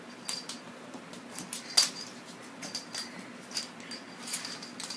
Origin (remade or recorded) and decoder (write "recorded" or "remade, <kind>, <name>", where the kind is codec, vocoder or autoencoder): recorded